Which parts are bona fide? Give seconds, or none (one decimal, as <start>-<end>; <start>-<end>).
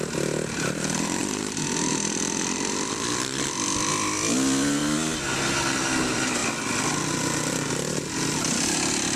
0.0-1.2; 3.9-9.2